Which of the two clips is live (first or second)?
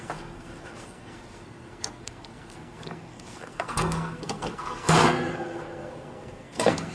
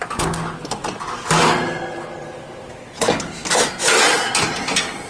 second